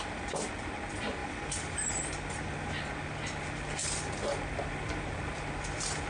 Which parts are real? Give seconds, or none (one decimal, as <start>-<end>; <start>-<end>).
0.0-1.2; 2.7-3.8; 5.6-6.1